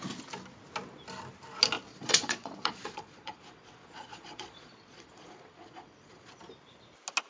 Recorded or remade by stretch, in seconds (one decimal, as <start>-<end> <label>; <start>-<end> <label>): 0.0-1.9 recorded; 1.9-6.3 remade; 6.3-7.3 recorded